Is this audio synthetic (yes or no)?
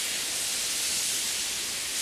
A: no